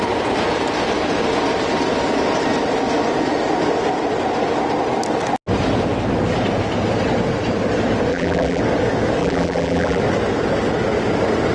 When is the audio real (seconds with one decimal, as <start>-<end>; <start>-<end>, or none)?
0.0-8.1; 8.6-9.2; 10.0-11.5